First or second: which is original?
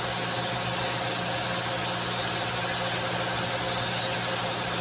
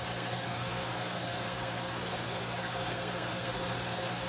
first